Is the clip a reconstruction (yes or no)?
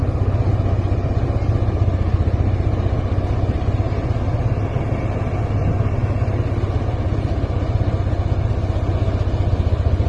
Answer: no